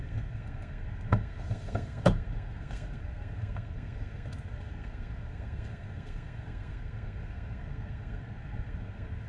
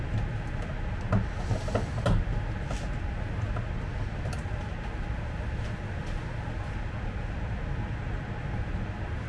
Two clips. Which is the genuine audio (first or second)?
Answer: second